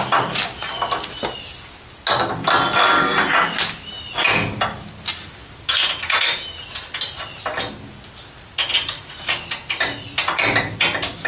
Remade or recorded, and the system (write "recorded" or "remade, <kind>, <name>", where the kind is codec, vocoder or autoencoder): recorded